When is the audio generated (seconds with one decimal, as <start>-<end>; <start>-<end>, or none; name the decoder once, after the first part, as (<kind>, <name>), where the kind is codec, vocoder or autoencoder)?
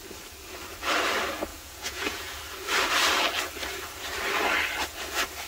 1.5-2.4 (vocoder, Vocos)